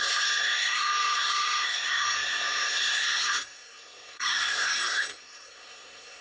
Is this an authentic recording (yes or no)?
no